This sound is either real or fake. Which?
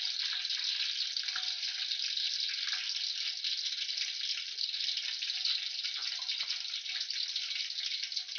real